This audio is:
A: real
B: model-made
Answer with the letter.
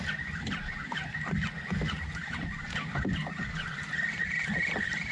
A